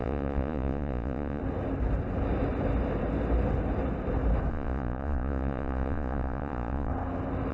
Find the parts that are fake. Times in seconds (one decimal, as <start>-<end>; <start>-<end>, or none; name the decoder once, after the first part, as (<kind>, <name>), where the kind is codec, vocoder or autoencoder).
0.0-1.4 (vocoder, Vocos); 4.5-6.9